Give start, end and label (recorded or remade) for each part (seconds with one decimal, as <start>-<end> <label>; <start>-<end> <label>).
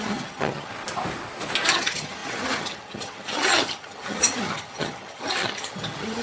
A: 0.0-0.7 remade; 0.7-1.7 recorded; 1.7-6.2 remade